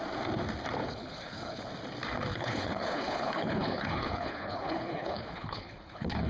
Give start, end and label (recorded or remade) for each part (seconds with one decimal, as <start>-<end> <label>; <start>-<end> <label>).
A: 0.0-0.8 recorded; 0.8-1.7 remade; 1.7-2.3 recorded; 2.3-6.3 remade